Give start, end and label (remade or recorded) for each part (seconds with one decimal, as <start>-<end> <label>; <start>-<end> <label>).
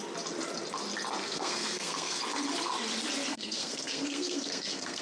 0.0-1.2 recorded; 1.2-2.2 remade; 2.2-3.3 recorded; 3.3-5.0 remade